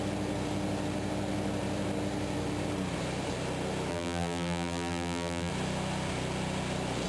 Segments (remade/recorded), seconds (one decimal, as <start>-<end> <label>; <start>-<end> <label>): 0.0-3.9 recorded; 3.9-5.5 remade; 5.5-7.1 recorded